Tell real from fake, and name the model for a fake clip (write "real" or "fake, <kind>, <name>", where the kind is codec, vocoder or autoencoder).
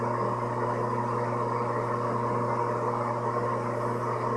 real